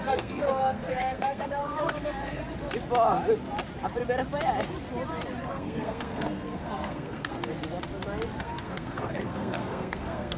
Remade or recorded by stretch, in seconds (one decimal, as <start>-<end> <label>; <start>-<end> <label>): 0.0-2.4 remade; 2.4-5.4 recorded; 5.4-7.5 remade; 7.5-8.4 recorded; 8.4-10.4 remade